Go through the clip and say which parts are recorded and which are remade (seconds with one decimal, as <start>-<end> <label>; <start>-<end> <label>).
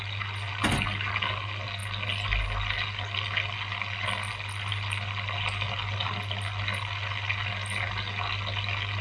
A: 0.0-9.0 recorded